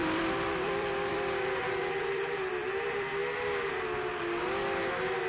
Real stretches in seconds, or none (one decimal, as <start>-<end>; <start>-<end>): 3.2-5.3